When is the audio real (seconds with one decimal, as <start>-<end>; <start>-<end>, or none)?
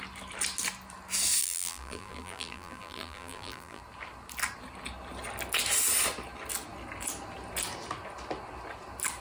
0.0-1.4; 3.8-9.2